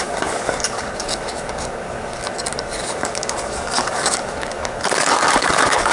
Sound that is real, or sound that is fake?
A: fake